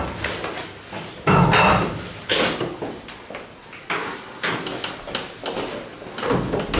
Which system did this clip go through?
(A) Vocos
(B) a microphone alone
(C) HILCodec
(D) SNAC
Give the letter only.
B